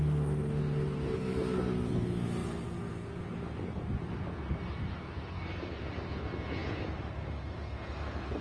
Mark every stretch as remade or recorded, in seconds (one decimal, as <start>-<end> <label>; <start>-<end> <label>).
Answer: 0.0-8.4 recorded